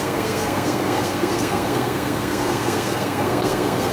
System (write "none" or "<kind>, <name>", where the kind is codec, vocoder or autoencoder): codec, SNAC